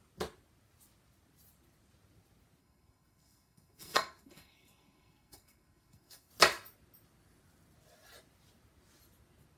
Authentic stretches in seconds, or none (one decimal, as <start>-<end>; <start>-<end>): 0.0-2.6; 6.3-9.6